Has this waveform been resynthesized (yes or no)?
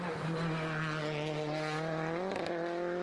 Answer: no